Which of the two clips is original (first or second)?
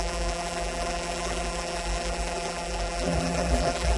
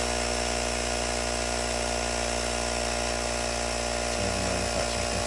second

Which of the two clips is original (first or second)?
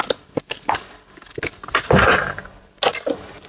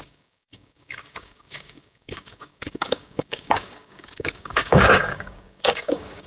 first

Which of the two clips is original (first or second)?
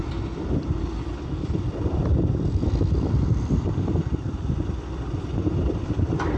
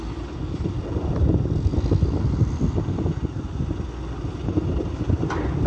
second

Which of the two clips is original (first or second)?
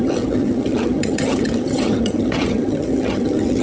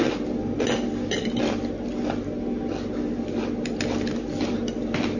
second